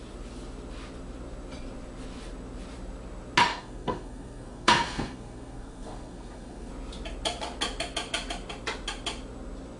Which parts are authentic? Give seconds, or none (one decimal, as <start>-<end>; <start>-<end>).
0.0-3.5; 6.7-9.8